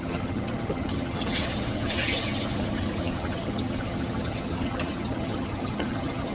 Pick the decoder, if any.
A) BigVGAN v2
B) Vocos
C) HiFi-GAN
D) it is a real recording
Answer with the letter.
C